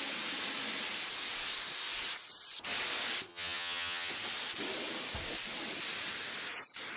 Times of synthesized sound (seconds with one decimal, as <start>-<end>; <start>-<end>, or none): 3.3-4.1

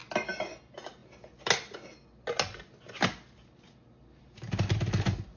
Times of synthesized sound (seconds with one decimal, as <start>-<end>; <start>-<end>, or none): none